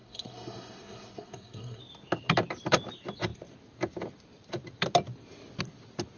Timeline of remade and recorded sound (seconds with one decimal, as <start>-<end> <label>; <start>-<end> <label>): 0.0-1.8 remade; 1.8-6.2 recorded